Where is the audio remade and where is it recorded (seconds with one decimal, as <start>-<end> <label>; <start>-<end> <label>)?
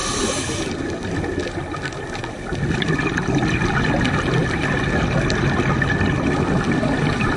0.0-7.4 recorded